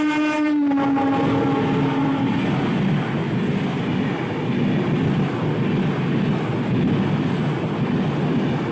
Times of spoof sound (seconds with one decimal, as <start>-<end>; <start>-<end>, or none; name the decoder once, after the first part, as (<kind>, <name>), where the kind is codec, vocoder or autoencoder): none